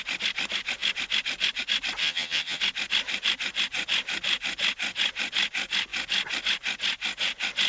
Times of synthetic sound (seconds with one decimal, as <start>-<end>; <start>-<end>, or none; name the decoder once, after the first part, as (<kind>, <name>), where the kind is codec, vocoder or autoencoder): 2.0-2.6 (vocoder, HiFi-GAN)